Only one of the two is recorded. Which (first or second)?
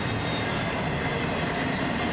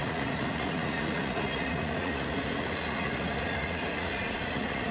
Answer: first